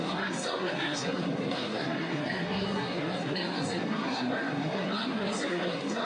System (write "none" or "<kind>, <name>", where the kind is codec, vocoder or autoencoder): codec, SNAC